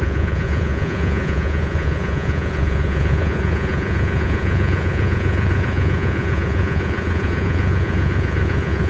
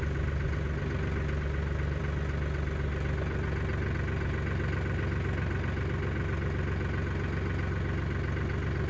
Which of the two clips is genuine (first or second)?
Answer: second